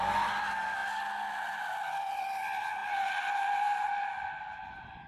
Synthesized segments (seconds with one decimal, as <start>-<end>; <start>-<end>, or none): none